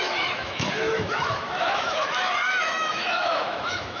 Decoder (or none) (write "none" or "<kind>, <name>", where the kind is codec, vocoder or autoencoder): autoencoder, DAC-VAE